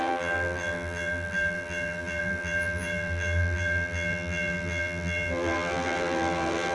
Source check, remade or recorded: remade